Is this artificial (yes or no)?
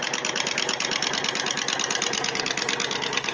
no